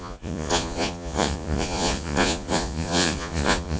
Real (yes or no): no